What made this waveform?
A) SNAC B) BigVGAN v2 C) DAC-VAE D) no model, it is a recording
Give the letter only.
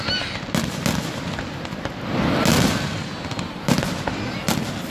D